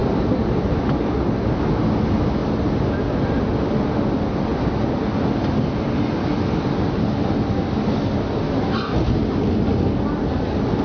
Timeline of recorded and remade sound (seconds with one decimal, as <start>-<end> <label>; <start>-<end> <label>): 0.0-10.8 recorded